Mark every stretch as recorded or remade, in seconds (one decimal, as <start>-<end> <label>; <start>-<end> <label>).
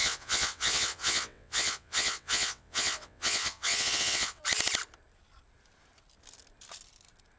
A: 0.0-4.4 remade; 4.4-7.4 recorded